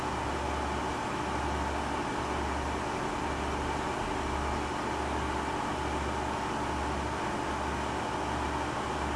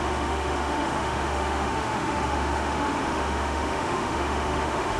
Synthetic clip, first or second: second